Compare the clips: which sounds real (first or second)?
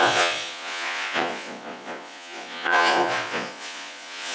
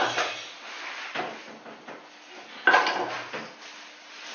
second